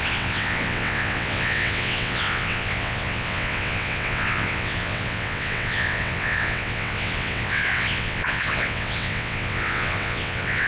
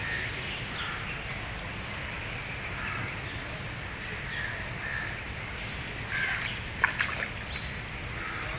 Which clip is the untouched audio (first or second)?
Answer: second